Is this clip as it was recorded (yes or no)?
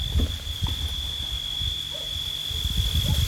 yes